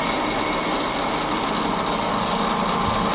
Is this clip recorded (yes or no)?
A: yes